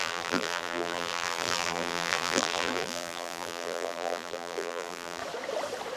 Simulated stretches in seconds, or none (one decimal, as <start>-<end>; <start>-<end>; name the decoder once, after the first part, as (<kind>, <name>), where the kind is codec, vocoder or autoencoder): 0.0-5.2 (vocoder, BigVGAN v2)